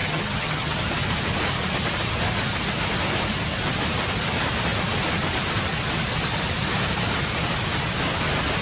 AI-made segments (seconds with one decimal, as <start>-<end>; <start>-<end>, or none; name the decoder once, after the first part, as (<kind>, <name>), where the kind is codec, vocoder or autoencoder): 0.0-0.8 (vocoder, HiFi-GAN)